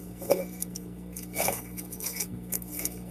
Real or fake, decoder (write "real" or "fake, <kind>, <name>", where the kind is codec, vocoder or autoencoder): fake, codec, SNAC